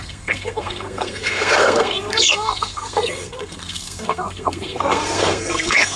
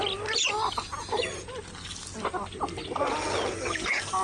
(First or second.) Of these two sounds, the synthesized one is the first